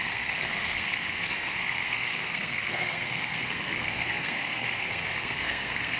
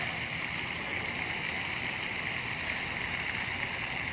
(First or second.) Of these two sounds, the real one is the second